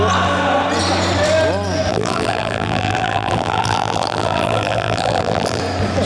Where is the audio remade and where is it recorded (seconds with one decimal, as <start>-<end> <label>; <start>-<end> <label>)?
0.0-1.9 recorded; 1.9-5.6 remade; 5.6-6.1 recorded